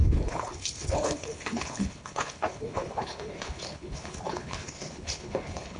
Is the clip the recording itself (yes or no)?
no